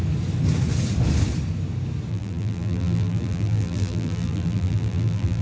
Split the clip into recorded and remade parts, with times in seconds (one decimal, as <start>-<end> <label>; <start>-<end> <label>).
0.0-2.1 recorded; 2.1-5.4 remade